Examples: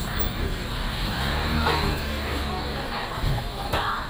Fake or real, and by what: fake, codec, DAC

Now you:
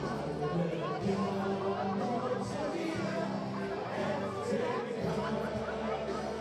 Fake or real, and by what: real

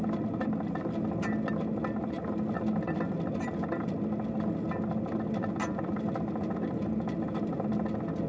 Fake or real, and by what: real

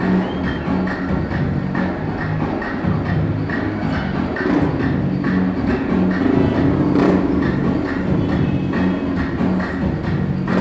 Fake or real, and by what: real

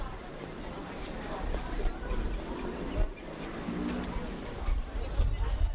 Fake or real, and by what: real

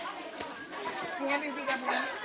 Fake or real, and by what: fake, vocoder, BigVGAN v2